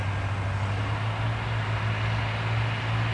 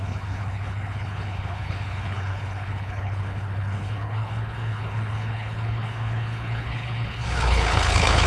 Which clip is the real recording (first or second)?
first